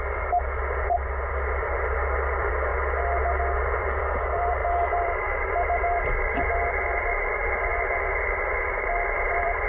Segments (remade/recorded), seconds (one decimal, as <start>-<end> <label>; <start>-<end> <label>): 0.0-2.7 remade; 2.7-3.6 recorded; 3.6-7.7 remade; 7.7-8.5 recorded; 8.5-9.7 remade